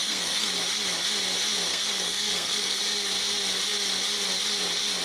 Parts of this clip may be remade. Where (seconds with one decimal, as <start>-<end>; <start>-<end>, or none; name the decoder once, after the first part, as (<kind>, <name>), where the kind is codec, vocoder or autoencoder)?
0.0-0.5 (codec, SNAC); 1.7-2.8